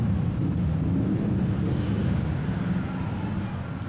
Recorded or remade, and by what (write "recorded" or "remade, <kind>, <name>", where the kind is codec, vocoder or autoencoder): recorded